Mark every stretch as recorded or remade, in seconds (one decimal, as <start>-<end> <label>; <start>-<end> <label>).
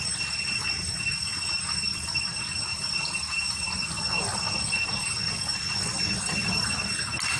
0.0-2.7 recorded; 2.7-4.1 remade; 4.1-5.5 recorded; 5.5-6.7 remade; 6.7-7.4 recorded